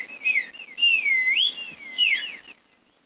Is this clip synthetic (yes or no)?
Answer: no